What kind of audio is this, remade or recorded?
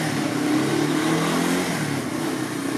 recorded